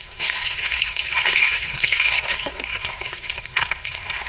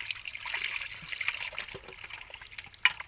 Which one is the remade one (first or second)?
first